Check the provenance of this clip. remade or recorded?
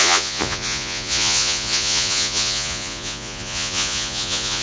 remade